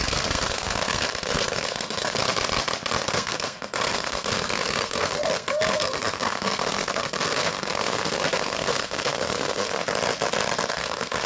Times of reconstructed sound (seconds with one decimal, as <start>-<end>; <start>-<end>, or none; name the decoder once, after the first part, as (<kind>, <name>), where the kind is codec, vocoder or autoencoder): 0.0-2.2 (codec, SNAC); 3.1-9.8; 10.7-11.3